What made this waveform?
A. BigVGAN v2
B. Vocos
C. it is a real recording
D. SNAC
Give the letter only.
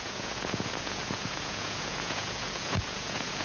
B